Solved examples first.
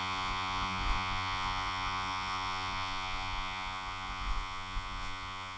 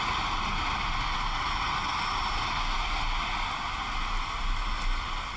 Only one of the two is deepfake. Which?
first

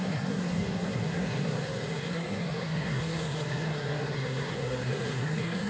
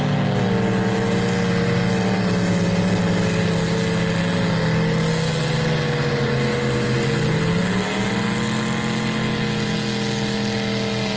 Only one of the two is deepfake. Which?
first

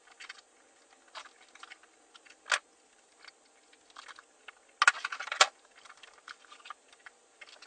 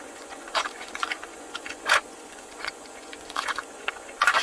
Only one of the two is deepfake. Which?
second